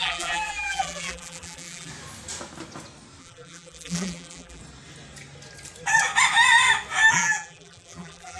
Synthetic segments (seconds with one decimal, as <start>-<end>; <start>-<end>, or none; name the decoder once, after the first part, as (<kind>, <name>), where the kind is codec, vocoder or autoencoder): 0.0-1.9 (vocoder, BigVGAN v2); 3.2-4.6; 7.1-8.4